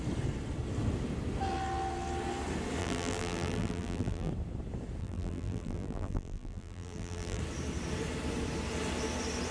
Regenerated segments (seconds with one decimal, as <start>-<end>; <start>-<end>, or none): 2.8-4.3; 5.0-7.4